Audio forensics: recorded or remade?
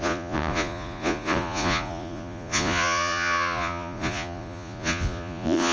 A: remade